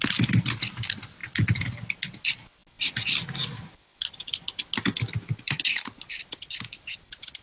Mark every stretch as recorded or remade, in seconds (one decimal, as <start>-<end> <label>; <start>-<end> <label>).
0.0-7.4 recorded